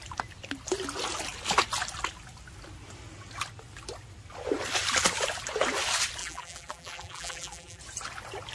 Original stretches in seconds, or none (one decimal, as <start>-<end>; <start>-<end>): 0.0-6.2; 7.8-8.5